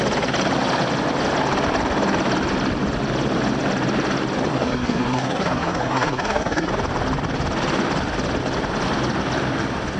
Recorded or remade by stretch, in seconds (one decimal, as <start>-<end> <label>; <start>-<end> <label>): 0.0-4.5 recorded; 4.5-6.7 remade; 6.7-10.0 recorded